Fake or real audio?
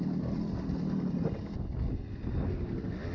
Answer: real